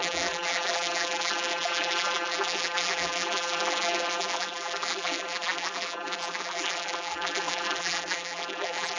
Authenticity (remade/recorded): remade